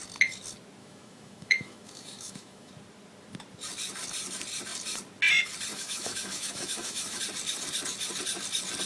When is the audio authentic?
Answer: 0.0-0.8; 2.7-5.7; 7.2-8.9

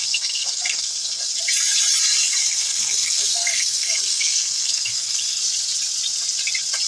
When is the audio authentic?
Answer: 1.3-2.4; 5.4-6.9

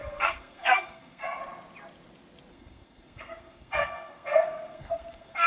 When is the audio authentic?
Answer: 1.4-2.5

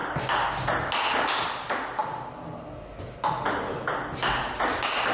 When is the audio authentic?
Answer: 0.0-5.1

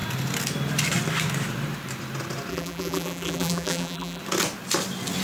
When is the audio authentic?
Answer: 0.0-2.5; 4.2-5.2